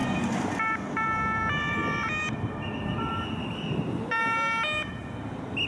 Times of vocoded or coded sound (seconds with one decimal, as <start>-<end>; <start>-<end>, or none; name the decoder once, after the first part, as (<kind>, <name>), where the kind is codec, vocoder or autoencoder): 0.0-3.4 (vocoder, BigVGAN v2)